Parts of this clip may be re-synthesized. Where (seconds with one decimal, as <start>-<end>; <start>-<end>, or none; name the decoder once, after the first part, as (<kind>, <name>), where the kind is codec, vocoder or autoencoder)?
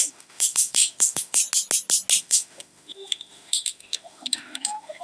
0.0-1.4 (autoencoder, DAC-VAE); 2.2-5.0